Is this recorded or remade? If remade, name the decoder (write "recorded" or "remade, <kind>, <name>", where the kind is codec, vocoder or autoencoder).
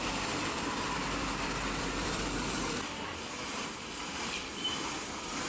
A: remade, vocoder, BigVGAN v2